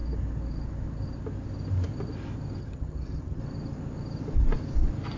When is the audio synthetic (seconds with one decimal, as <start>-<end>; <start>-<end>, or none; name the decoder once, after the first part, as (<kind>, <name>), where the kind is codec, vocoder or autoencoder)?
2.6-3.4 (vocoder, HiFi-GAN)